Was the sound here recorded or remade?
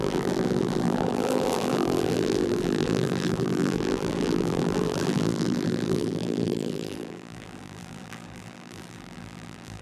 remade